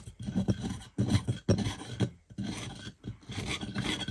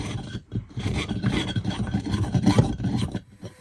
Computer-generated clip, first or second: second